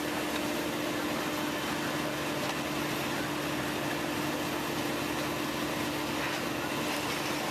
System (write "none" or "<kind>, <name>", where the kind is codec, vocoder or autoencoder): none